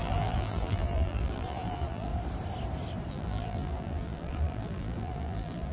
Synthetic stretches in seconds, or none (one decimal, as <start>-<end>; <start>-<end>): 0.0-2.1; 3.1-5.7